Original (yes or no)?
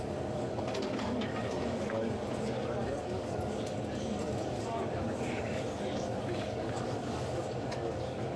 no